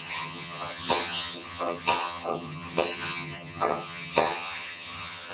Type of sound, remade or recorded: remade